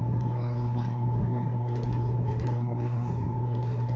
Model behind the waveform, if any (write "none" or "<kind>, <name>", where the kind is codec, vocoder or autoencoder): codec, SNAC